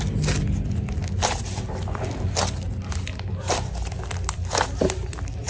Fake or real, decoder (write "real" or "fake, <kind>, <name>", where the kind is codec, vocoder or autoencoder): real